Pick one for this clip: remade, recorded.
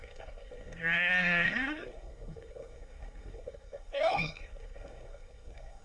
remade